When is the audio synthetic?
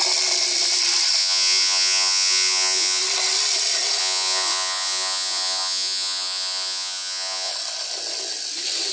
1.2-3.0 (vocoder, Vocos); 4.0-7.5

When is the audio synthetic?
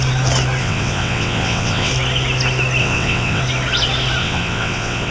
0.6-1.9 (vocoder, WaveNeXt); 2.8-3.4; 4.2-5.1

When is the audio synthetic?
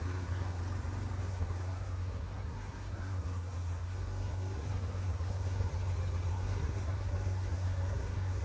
0.0-0.6 (codec, SNAC); 1.2-5.7; 6.3-8.4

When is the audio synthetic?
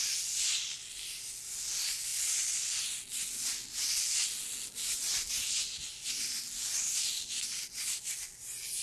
none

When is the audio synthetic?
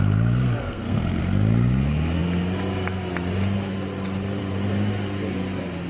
0.6-1.2 (codec, SNAC)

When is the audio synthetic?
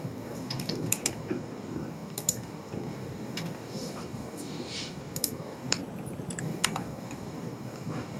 0.0-5.8 (codec, DAC); 6.4-8.2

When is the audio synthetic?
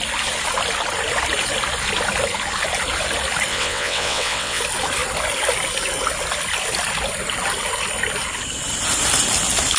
3.5-4.6 (vocoder, WaveNeXt)